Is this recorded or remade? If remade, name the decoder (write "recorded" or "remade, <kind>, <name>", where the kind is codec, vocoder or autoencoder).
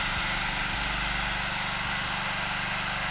recorded